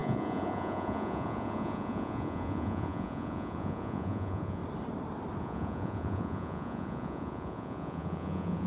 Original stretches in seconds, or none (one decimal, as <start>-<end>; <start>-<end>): 4.6-5.4